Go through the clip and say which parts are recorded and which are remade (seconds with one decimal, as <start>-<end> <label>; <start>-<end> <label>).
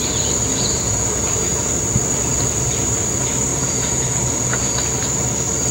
0.0-0.5 recorded; 0.5-1.3 remade; 1.3-3.5 recorded; 3.5-4.8 remade; 4.8-5.7 recorded